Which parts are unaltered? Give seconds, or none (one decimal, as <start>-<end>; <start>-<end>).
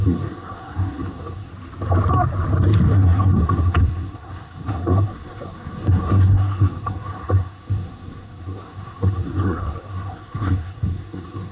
1.5-2.9